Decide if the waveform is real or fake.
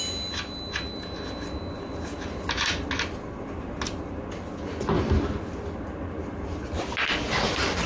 real